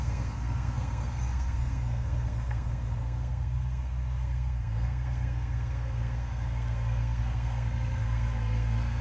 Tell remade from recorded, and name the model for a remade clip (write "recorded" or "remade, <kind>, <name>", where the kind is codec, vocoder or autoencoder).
remade, codec, SNAC